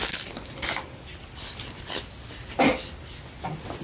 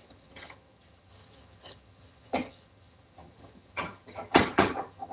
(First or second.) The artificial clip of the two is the second